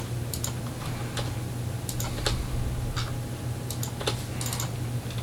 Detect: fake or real real